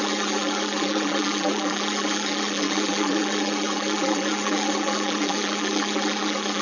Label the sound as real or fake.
fake